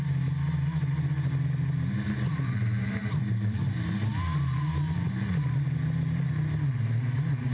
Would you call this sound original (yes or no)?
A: yes